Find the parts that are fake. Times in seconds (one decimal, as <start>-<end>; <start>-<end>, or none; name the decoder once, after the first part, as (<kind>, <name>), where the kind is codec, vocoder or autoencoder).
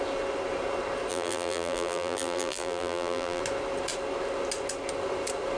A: 1.1-3.4 (vocoder, BigVGAN v2)